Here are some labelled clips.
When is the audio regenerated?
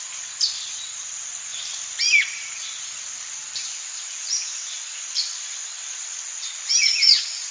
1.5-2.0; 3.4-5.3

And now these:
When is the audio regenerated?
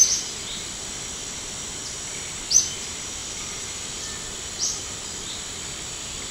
3.2-4.0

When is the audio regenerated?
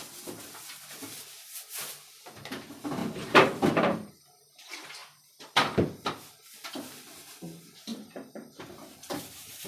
3.0-4.1; 7.9-9.7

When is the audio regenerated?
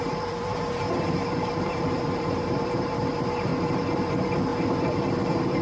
0.0-3.5; 4.1-4.5